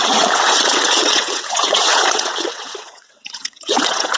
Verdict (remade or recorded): remade